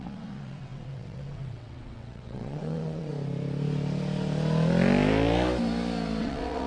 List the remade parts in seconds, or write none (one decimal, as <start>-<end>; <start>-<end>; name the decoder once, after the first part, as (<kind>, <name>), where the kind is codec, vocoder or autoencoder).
0.0-3.1 (vocoder, WaveNeXt); 6.2-6.7